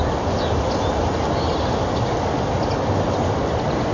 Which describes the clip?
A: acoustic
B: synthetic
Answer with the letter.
A